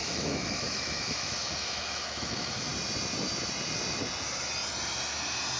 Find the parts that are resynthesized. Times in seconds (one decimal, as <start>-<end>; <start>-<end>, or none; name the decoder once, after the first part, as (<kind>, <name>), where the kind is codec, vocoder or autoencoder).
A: 0.0-2.7 (autoencoder, DAC-VAE)